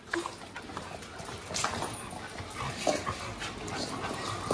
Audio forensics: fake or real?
real